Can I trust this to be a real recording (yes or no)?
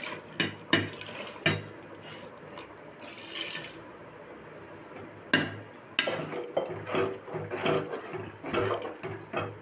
yes